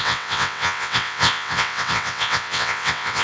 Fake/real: fake